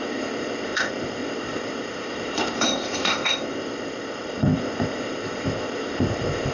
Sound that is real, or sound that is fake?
fake